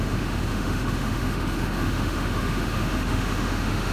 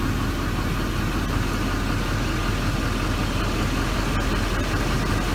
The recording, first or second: second